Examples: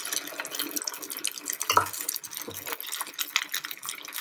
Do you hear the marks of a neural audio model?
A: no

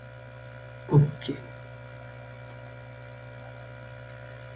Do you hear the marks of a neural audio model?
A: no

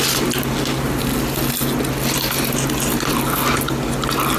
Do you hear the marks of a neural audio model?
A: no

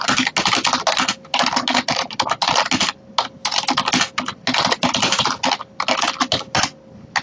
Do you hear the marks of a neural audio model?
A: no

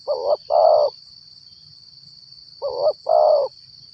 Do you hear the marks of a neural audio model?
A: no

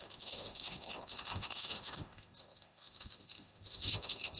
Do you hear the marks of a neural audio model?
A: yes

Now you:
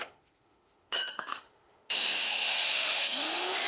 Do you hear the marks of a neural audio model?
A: yes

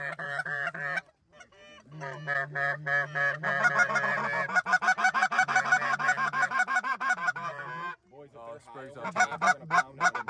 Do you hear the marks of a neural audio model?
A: no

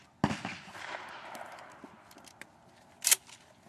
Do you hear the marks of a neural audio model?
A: no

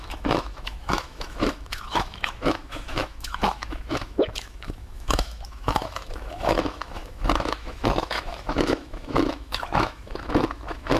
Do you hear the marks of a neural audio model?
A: yes